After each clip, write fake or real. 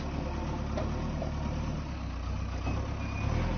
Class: real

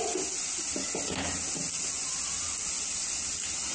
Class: real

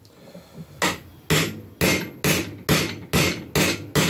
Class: real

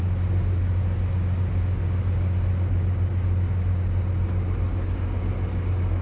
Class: real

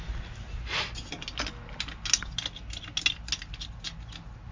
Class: real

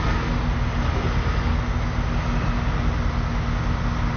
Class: real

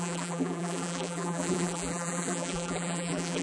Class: fake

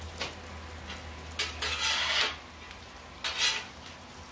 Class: real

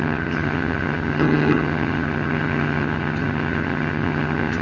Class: fake